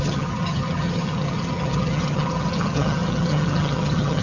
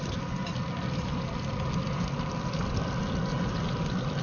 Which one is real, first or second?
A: second